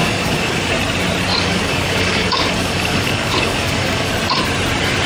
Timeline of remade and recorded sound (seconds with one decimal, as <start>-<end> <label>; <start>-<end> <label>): 0.0-0.7 remade; 0.7-1.3 recorded; 1.3-4.1 remade; 4.1-5.1 recorded